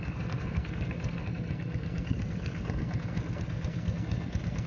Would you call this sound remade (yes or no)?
yes